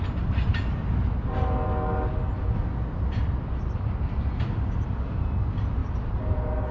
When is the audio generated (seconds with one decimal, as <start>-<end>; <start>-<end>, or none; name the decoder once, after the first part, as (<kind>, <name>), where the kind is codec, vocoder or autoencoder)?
none